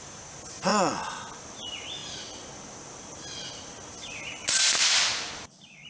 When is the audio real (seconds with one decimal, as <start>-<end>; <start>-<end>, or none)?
0.0-5.9

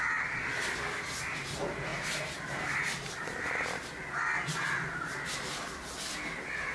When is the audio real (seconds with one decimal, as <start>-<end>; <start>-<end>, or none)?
0.0-6.7

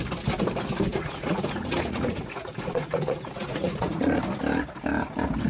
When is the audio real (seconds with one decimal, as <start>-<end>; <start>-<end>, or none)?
0.0-0.9; 4.2-5.5

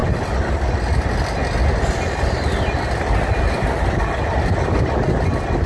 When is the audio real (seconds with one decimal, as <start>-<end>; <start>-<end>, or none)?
0.0-5.7